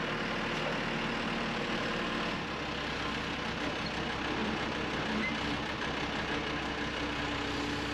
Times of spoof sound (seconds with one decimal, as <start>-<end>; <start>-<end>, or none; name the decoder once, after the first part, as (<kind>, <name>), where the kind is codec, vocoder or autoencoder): none